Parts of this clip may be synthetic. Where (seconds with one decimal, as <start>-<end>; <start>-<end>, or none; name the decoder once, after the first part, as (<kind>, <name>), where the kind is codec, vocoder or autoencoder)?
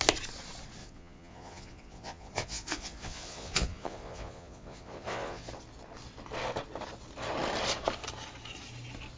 0.8-5.5 (vocoder, Vocos)